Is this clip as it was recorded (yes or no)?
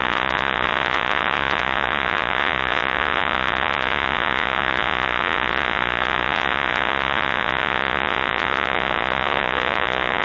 no